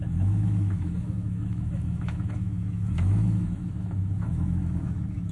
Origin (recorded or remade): remade